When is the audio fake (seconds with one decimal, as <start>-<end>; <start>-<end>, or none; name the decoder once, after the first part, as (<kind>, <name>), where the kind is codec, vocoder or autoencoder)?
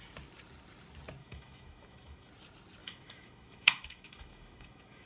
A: 1.2-2.3 (autoencoder, DAC-VAE); 2.8-5.1